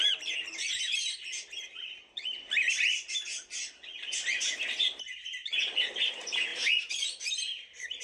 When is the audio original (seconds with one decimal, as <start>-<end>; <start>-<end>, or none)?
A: none